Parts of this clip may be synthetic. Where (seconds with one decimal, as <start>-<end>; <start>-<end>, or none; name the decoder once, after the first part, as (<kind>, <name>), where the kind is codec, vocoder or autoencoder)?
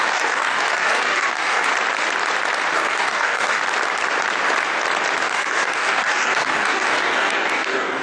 0.0-1.7 (codec, DAC); 2.7-3.6; 5.2-8.0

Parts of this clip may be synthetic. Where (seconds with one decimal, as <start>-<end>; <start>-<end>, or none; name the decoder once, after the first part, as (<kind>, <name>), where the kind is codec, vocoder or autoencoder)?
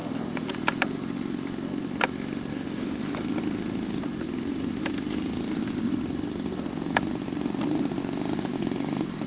2.5-3.0 (codec, DAC)